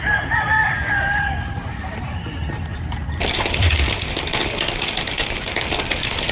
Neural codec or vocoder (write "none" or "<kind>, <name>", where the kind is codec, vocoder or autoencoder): vocoder, BigVGAN v2